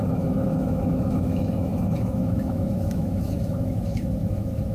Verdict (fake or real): fake